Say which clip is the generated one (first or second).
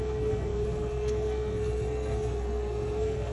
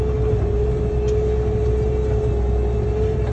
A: first